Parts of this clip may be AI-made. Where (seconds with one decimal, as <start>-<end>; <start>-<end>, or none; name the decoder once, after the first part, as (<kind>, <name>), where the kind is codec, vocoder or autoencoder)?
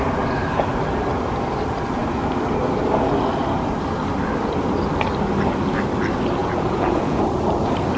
6.4-7.2 (vocoder, Vocos)